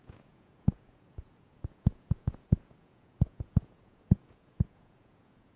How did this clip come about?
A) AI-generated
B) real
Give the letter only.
A